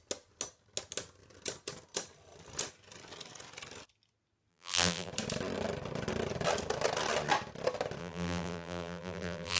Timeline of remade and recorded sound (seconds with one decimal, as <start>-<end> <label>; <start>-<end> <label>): 0.0-4.5 recorded; 4.5-5.1 remade; 5.1-8.0 recorded; 8.0-9.6 remade